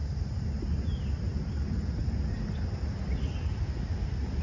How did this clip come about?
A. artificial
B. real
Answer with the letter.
B